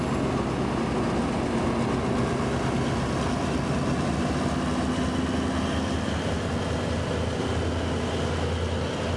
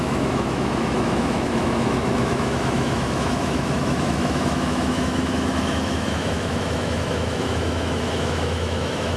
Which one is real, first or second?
first